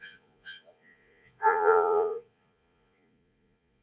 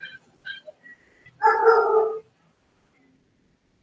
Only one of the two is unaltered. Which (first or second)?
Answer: second